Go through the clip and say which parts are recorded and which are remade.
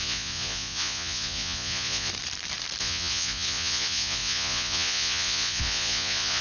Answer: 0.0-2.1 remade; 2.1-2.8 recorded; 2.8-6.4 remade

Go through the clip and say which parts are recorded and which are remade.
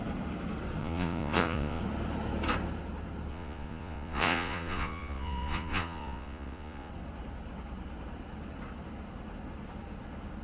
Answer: 0.0-0.8 recorded; 0.8-1.8 remade; 1.8-3.3 recorded; 3.3-6.9 remade; 6.9-10.4 recorded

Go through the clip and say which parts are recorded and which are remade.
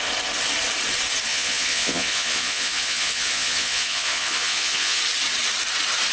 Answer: 0.0-1.3 recorded; 1.3-5.0 remade; 5.0-6.1 recorded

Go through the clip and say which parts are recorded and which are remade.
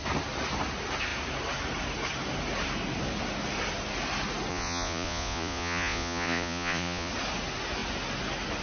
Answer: 0.0-4.5 recorded; 4.5-7.1 remade; 7.1-8.6 recorded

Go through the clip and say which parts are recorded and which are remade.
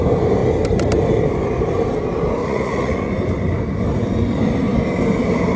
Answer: 0.0-2.4 recorded; 2.4-3.1 remade; 3.1-5.6 recorded